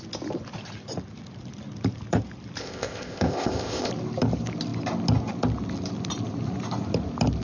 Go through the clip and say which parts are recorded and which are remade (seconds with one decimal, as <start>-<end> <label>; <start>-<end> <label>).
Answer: 0.0-2.6 recorded; 2.6-3.9 remade; 3.9-7.4 recorded